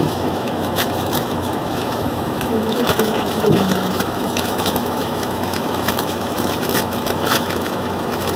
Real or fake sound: fake